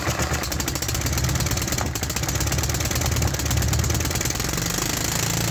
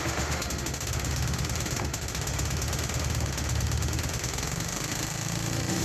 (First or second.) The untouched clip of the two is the first